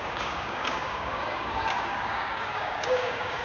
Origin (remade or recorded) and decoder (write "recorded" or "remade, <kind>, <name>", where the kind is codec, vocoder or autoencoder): remade, codec, DAC